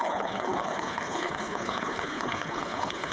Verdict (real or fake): fake